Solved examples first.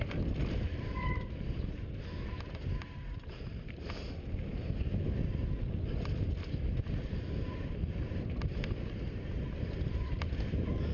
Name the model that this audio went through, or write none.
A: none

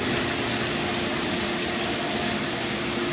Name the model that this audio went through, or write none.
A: none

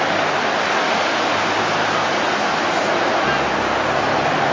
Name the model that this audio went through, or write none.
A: none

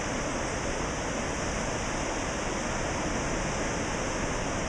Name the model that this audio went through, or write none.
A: none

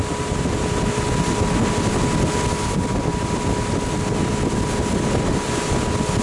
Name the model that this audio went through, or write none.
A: none